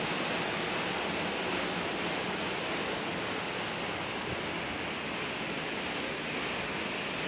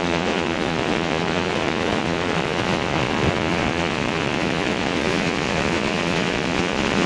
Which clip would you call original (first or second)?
first